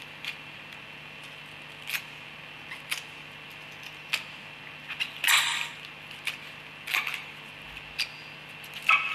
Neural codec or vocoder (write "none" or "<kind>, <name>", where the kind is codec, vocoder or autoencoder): none